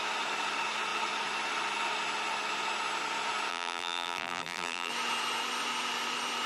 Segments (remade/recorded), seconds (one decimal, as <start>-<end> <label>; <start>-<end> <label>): 0.0-3.5 recorded; 3.5-4.9 remade; 4.9-6.5 recorded